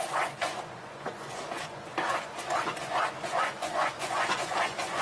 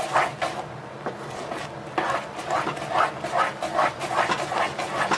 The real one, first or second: second